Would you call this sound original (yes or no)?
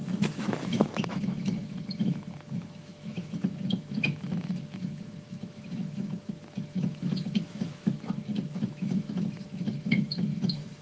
no